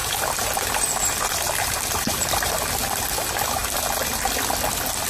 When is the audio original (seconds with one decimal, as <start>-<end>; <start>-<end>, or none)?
2.5-5.1